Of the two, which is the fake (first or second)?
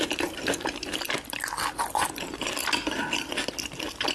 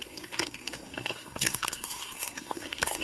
second